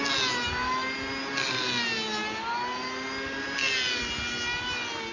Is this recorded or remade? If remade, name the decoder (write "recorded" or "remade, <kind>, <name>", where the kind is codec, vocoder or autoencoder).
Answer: recorded